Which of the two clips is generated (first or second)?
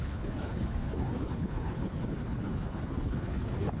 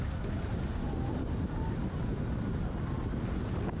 first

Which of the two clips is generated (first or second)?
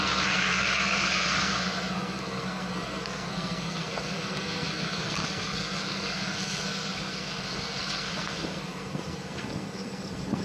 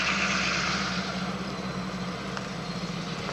first